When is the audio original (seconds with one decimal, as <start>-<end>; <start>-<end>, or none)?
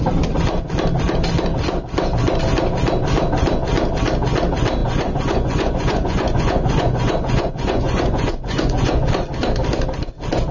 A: 0.0-4.8; 9.1-10.5